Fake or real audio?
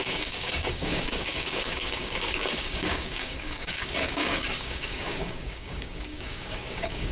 fake